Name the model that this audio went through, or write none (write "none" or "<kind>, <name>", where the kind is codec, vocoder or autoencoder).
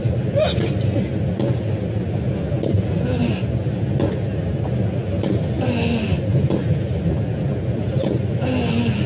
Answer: none